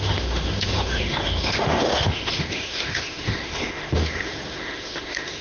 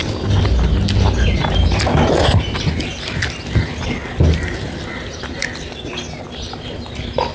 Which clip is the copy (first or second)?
first